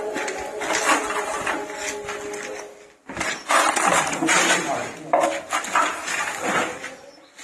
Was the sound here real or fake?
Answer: real